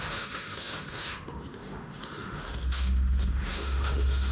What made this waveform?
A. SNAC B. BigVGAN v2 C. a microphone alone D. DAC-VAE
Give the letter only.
D